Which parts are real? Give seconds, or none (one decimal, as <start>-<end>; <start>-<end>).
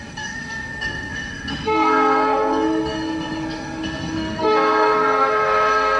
none